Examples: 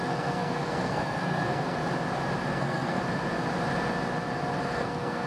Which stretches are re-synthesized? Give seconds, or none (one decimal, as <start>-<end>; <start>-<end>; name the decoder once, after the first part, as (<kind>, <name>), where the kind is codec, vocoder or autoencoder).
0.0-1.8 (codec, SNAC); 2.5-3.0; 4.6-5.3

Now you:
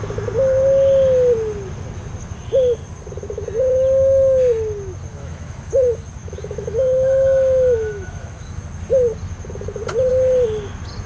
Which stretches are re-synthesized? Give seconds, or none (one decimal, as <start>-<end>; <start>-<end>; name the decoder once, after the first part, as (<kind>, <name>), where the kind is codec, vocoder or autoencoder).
5.1-5.7 (autoencoder, DAC-VAE); 6.2-8.6

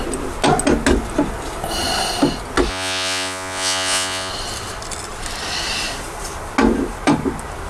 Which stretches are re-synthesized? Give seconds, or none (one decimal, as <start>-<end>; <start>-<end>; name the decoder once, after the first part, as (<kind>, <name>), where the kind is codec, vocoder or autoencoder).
2.7-4.3 (vocoder, Vocos)

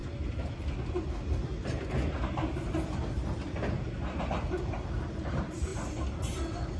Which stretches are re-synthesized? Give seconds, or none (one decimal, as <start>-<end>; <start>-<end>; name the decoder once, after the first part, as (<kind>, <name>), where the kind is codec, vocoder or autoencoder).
4.1-5.7 (vocoder, BigVGAN v2)

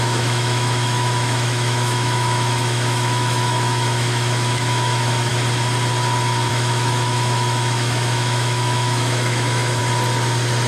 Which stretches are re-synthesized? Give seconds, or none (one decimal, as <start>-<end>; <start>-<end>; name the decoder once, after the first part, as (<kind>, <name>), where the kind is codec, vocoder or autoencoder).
0.0-5.3 (autoencoder, DAC-VAE); 6.5-9.8